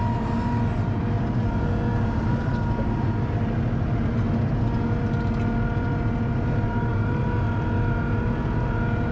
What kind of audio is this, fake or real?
real